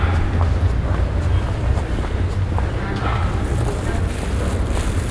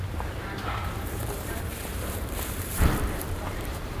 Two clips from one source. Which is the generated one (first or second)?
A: second